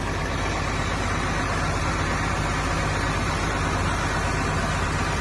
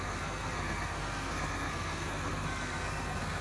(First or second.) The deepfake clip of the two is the second